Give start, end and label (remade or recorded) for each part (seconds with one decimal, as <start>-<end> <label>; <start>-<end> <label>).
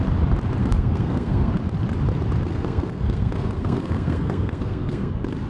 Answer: 0.0-0.6 recorded; 0.6-1.6 remade; 1.6-2.5 recorded; 2.5-5.1 remade; 5.1-5.5 recorded